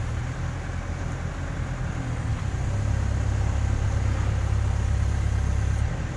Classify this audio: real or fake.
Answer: real